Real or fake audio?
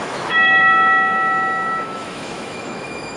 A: fake